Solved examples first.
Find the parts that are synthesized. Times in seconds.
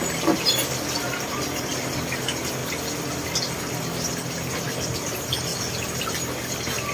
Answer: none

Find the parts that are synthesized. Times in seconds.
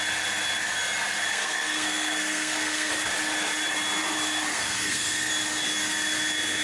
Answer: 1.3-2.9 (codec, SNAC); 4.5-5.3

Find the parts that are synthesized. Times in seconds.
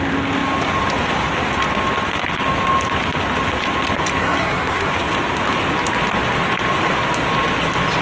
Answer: 4.2-4.9 (codec, SNAC)